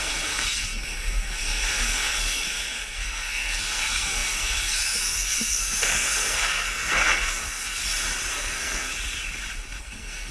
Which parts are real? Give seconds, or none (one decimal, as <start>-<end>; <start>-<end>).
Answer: 7.8-8.3; 8.9-9.8